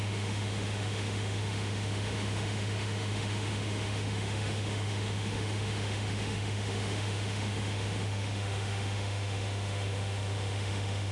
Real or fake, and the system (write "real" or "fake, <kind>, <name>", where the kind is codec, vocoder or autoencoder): fake, autoencoder, DAC-VAE